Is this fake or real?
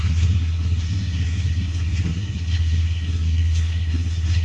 fake